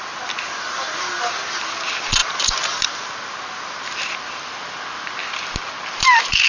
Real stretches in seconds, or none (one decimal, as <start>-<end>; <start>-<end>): 0.0-6.5